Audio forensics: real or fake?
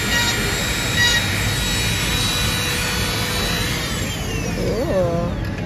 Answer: real